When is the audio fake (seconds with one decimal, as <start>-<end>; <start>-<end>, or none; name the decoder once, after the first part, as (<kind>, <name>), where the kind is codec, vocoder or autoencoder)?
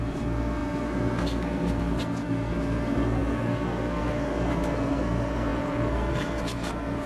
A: 0.0-7.1 (codec, SNAC)